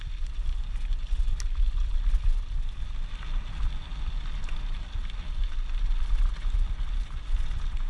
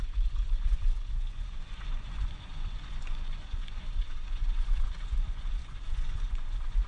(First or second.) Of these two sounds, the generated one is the second